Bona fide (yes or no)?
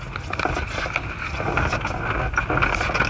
yes